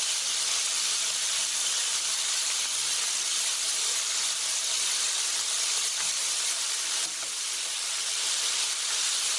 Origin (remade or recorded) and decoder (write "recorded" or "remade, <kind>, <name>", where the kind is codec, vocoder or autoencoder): remade, vocoder, BigVGAN v2